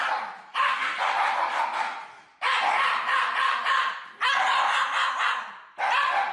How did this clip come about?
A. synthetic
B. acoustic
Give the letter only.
B